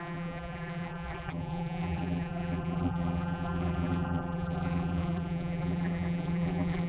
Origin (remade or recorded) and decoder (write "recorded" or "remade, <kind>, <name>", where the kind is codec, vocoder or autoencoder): remade, vocoder, BigVGAN v2